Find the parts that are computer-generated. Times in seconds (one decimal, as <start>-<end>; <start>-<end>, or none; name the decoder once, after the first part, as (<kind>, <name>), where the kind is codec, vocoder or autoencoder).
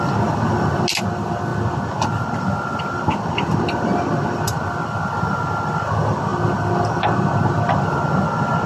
none